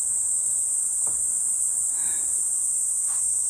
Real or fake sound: real